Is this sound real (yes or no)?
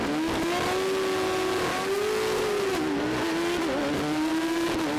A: yes